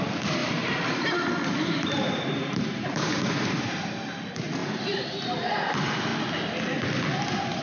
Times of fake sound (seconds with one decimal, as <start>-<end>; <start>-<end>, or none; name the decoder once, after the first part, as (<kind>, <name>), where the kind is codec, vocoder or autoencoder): 0.0-6.1 (vocoder, BigVGAN v2); 7.1-7.6